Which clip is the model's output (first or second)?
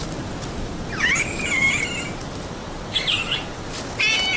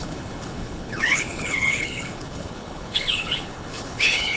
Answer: second